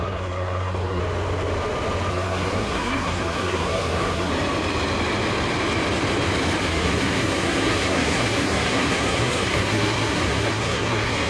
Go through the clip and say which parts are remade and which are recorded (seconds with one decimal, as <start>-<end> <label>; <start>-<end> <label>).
0.0-1.0 remade; 1.0-2.1 recorded; 2.1-4.3 remade; 4.3-6.6 recorded; 6.6-11.3 remade